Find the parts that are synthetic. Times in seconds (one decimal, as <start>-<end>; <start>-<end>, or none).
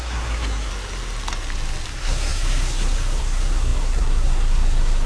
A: 0.0-0.7; 1.9-5.1